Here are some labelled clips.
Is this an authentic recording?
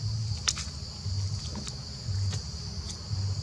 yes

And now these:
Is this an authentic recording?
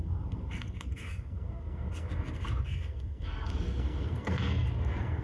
no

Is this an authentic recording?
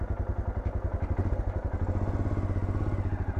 yes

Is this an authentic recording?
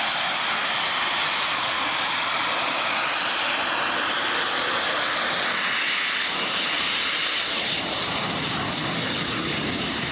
yes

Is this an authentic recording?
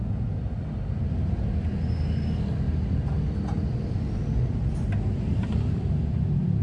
yes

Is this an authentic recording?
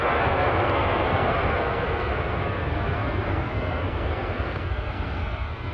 no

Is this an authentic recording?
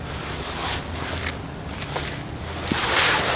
yes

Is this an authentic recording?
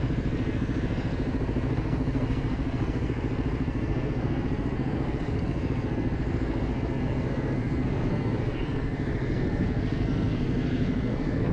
no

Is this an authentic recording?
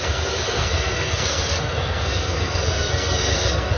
no